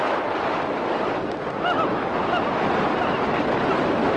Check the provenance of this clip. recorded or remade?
recorded